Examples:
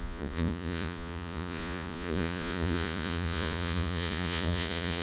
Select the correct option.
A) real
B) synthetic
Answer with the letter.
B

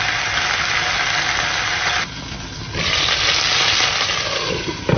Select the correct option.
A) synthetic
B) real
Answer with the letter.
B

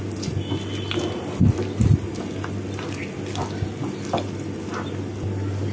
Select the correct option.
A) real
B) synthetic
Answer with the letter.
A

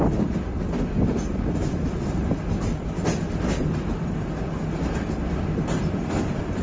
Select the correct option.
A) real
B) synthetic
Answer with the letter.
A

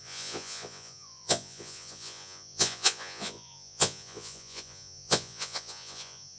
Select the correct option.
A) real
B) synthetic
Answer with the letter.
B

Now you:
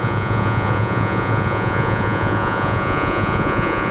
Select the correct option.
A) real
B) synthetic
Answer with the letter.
B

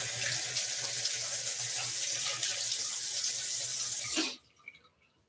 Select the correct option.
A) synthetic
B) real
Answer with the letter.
B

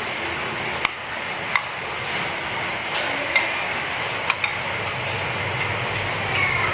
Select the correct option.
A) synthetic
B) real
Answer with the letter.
B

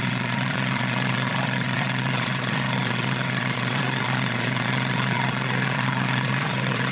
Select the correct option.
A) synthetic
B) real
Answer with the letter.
A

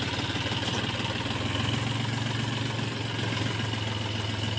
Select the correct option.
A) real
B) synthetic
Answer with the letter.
A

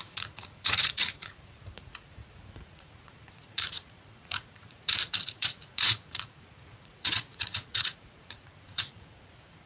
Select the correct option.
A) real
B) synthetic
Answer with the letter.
B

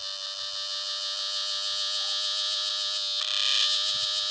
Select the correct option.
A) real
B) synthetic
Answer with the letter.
A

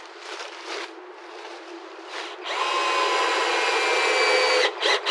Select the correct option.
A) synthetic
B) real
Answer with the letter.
B